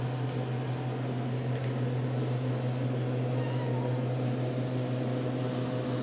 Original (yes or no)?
yes